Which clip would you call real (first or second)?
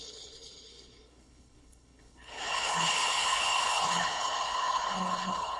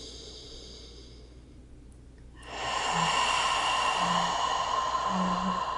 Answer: second